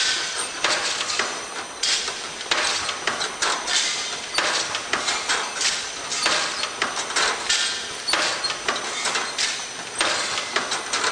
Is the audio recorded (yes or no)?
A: yes